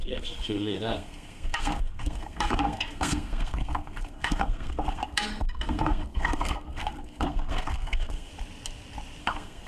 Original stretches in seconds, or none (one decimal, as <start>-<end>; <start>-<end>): 8.3-9.2